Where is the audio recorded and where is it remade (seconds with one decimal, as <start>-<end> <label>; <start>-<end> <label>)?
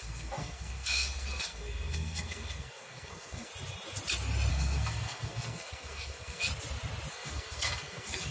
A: 0.0-3.5 remade; 3.5-4.5 recorded; 4.5-6.5 remade; 6.5-7.1 recorded; 7.1-8.3 remade